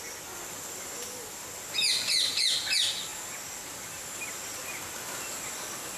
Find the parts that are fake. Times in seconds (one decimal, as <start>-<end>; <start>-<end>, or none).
none